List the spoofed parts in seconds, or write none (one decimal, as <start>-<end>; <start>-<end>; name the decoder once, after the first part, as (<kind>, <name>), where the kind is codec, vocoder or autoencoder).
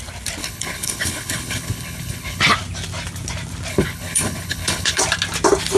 0.4-2.4 (codec, HILCodec); 3.7-5.0